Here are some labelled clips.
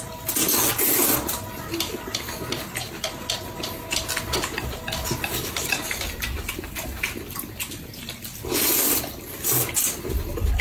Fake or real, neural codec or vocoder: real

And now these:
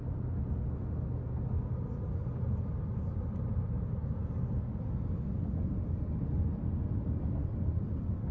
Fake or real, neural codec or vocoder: real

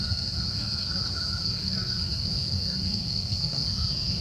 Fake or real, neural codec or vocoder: fake, codec, SNAC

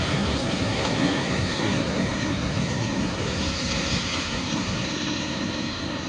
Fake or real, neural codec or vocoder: fake, codec, SNAC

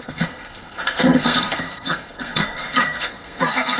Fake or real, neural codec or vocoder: fake, codec, SNAC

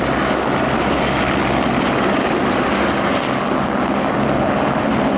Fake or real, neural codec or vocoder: real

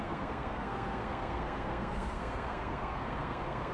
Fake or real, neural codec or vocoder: fake, codec, SNAC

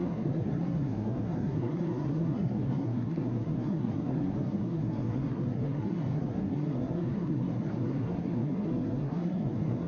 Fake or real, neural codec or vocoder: fake, codec, SNAC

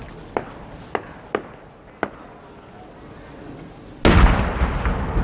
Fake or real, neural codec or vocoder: real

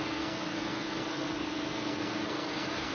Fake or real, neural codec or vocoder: fake, codec, SNAC